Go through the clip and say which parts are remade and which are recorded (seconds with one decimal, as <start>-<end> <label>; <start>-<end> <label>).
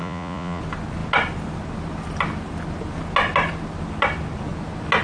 0.0-0.6 remade; 0.6-5.0 recorded